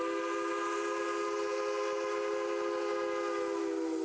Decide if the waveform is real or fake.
real